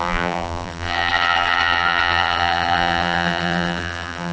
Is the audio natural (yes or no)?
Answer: no